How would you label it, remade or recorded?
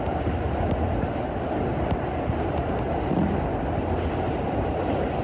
recorded